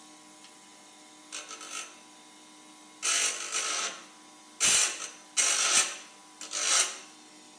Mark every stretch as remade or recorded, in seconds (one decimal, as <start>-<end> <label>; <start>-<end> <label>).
0.0-7.6 recorded